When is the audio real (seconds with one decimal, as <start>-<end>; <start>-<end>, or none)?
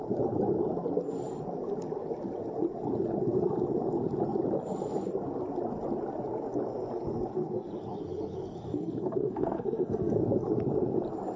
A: 0.0-8.7; 10.2-11.4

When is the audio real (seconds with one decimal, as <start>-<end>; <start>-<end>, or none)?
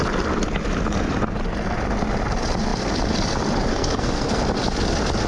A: 0.0-3.7; 4.4-5.3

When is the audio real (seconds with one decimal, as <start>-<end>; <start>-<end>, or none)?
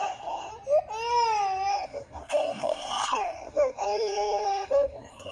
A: 0.5-1.7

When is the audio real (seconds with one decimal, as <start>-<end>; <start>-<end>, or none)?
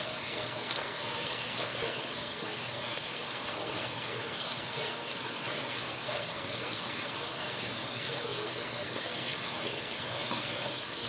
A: none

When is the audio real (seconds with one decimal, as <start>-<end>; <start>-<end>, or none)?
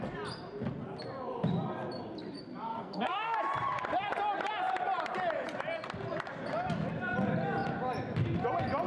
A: 0.0-2.7; 3.4-8.9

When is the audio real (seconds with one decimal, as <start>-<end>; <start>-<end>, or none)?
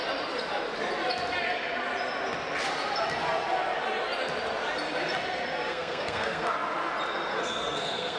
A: 0.0-5.7; 6.5-7.3